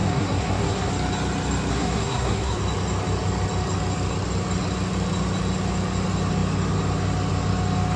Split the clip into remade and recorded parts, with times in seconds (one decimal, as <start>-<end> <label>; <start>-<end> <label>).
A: 0.0-0.9 remade; 0.9-1.7 recorded; 1.7-2.6 remade; 2.6-8.0 recorded